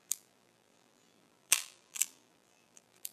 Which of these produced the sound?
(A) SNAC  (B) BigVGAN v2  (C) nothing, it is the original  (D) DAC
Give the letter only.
B